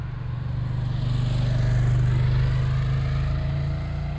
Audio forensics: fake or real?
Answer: real